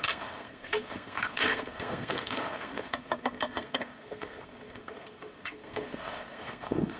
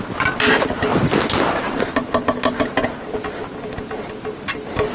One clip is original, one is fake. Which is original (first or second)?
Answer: second